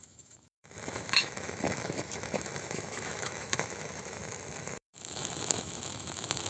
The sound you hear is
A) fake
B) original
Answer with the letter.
A